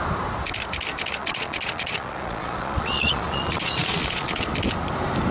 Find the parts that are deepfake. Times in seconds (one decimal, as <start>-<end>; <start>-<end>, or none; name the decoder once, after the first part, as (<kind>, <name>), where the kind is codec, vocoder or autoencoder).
1.2-4.4 (vocoder, Vocos)